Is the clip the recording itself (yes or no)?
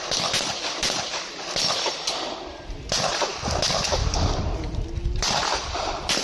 yes